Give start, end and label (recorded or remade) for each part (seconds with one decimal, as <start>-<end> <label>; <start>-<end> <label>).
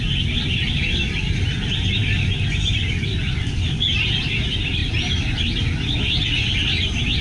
0.0-7.2 recorded